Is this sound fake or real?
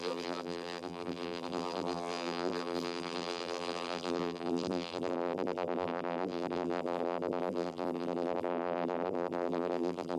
fake